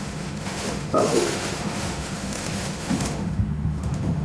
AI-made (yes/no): yes